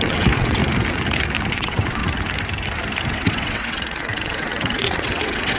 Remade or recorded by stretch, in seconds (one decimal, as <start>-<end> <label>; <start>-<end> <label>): 0.0-0.6 remade; 0.6-1.5 recorded; 1.5-2.0 remade; 2.0-3.1 recorded; 3.1-5.6 remade